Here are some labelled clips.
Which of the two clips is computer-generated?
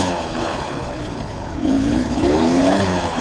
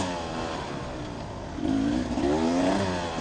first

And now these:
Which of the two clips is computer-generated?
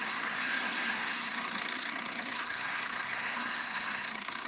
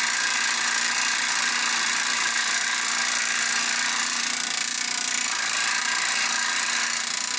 first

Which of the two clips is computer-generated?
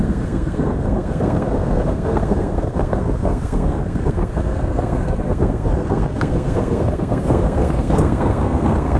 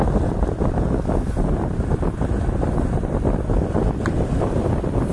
first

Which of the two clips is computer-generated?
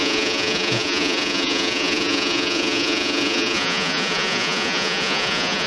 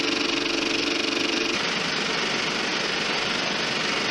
first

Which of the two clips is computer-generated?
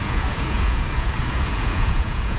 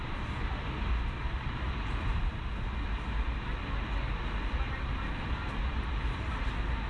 first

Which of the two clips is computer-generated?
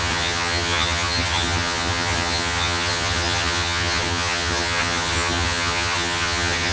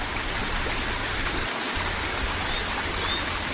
first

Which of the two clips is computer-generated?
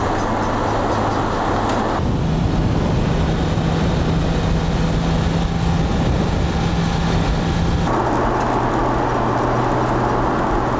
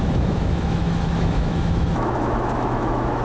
second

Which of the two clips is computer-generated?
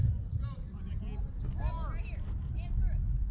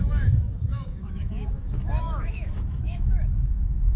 second